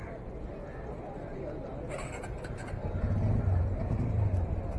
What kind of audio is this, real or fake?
real